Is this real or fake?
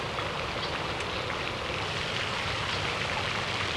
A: real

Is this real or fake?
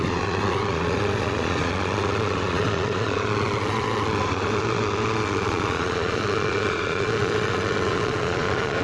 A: fake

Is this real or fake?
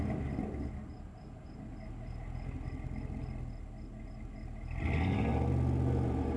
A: real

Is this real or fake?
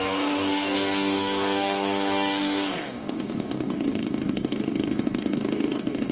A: fake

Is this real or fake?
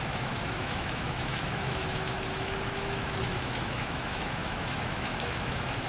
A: fake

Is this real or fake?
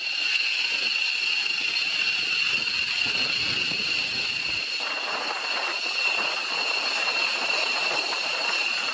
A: real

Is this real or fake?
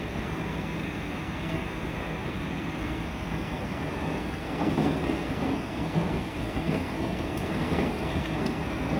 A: fake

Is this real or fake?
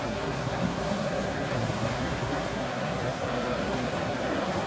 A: fake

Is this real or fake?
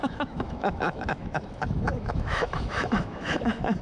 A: fake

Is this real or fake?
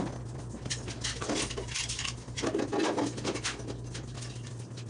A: real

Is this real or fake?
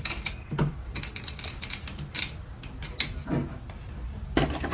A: real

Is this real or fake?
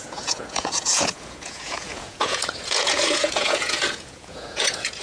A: fake